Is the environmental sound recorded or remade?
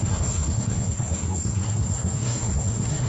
remade